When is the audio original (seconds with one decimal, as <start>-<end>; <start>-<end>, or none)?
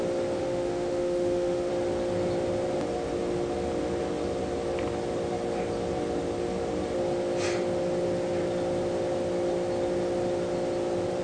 0.0-0.4; 1.7-11.2